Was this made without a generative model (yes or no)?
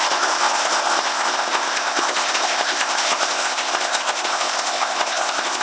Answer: no